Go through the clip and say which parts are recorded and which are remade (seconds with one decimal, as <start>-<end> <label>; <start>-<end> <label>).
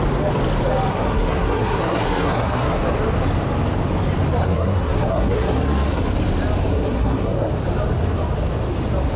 0.0-0.9 recorded; 0.9-2.8 remade; 2.8-4.4 recorded; 4.4-6.0 remade; 6.0-6.7 recorded; 6.7-7.5 remade; 7.5-9.2 recorded